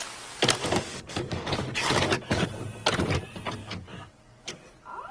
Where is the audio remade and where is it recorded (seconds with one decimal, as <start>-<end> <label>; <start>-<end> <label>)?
0.0-0.6 recorded; 0.6-2.4 remade; 2.4-3.6 recorded; 3.6-4.6 remade; 4.6-5.1 recorded